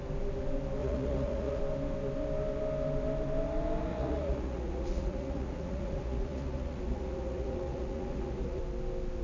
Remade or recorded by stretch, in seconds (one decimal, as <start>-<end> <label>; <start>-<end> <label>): 0.0-0.8 recorded; 0.8-1.6 remade; 1.6-3.9 recorded; 3.9-8.6 remade; 8.6-9.2 recorded